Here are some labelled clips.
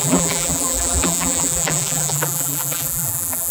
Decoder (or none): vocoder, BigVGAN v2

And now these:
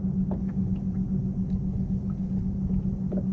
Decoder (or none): none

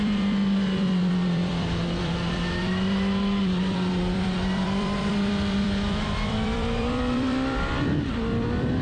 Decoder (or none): vocoder, BigVGAN v2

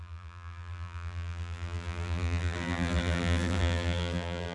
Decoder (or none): vocoder, BigVGAN v2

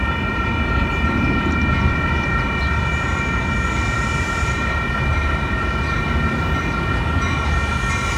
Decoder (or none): vocoder, BigVGAN v2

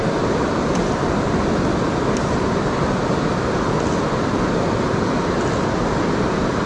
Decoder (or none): none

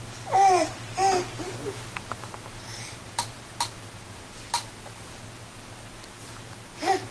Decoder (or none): none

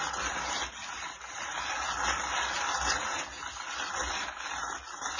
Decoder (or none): none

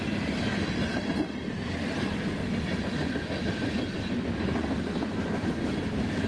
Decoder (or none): vocoder, BigVGAN v2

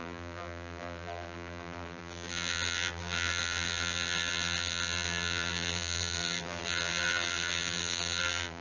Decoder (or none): vocoder, BigVGAN v2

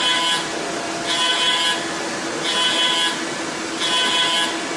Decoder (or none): none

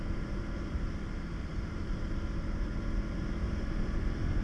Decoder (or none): vocoder, BigVGAN v2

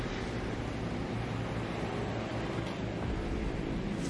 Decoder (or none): none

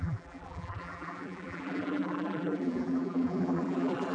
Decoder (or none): vocoder, BigVGAN v2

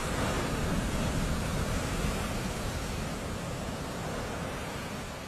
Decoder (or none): none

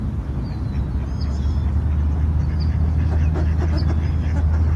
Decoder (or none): none